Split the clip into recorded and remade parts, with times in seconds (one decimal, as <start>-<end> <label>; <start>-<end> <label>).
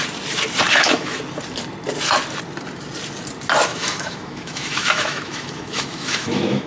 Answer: 0.0-0.7 recorded; 0.7-1.2 remade; 1.2-3.7 recorded; 3.7-6.7 remade